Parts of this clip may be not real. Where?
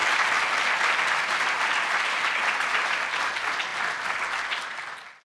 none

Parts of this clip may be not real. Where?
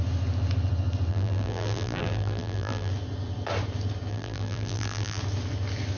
1.1-2.9 (vocoder, BigVGAN v2); 4.1-5.2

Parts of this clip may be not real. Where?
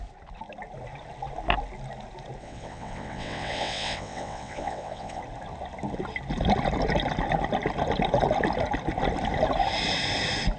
2.4-5.2 (vocoder, WaveNeXt)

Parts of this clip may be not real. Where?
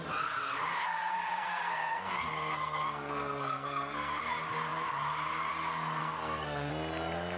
0.7-4.2 (codec, SNAC); 6.0-6.7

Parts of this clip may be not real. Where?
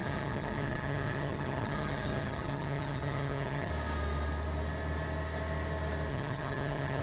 0.0-3.7 (vocoder, HiFi-GAN); 6.1-7.0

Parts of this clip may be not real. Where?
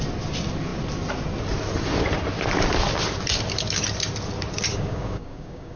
4.7-5.8 (codec, DAC)